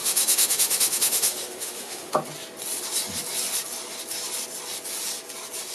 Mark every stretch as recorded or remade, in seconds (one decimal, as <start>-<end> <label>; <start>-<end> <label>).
0.0-2.1 remade; 2.1-5.7 recorded